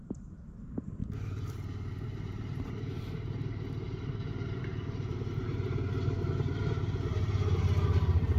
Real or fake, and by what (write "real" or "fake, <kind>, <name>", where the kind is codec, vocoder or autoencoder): fake, vocoder, BigVGAN v2